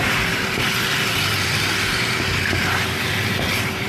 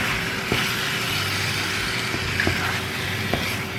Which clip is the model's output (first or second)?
first